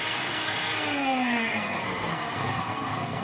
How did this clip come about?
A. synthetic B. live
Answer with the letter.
A